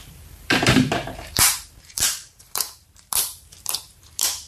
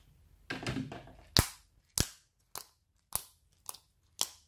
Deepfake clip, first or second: first